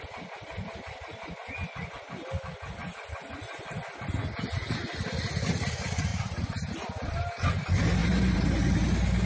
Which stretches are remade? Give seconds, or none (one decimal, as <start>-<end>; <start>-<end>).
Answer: 6.1-6.7; 8.0-8.6